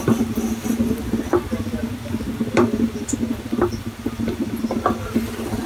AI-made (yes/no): no